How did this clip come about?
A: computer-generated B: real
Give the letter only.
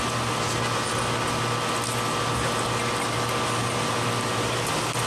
B